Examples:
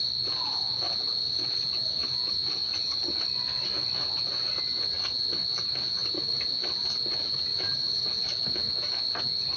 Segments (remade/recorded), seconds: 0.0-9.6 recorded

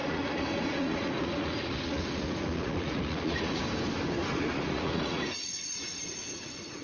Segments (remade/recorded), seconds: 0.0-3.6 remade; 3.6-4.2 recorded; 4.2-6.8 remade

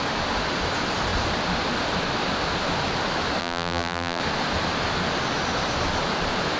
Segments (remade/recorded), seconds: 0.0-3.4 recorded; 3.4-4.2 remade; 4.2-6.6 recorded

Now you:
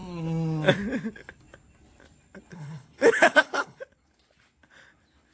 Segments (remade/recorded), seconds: 0.0-2.5 recorded; 2.5-3.8 remade; 3.8-5.3 recorded

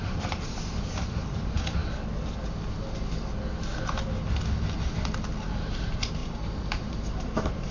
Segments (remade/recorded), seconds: 0.0-1.8 remade; 1.8-5.4 recorded; 5.4-7.7 remade

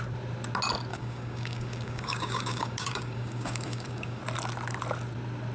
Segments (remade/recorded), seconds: 0.0-0.9 recorded; 0.9-4.2 remade; 4.2-5.5 recorded

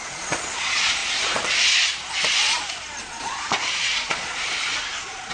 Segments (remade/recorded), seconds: 0.0-1.0 remade; 1.0-3.0 recorded; 3.0-5.3 remade

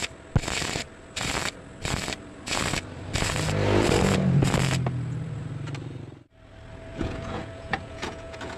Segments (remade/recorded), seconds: 0.0-6.9 recorded; 6.9-8.6 remade